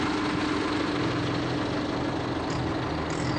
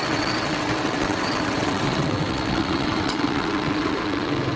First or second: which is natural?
first